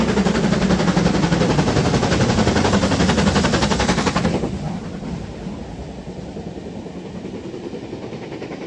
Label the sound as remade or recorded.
recorded